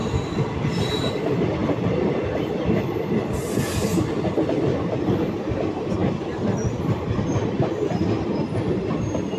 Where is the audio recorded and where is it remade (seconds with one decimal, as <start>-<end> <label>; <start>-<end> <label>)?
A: 0.0-1.1 remade; 1.1-1.6 recorded; 1.6-4.0 remade; 4.0-9.4 recorded